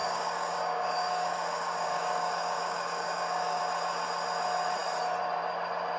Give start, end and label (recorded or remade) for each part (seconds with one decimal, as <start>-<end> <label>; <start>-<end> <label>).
0.0-3.6 remade; 3.6-6.0 recorded